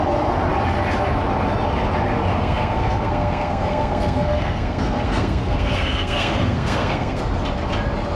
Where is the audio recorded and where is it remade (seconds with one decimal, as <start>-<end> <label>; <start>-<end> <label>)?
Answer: 0.0-2.3 recorded; 2.3-7.2 remade; 7.2-8.2 recorded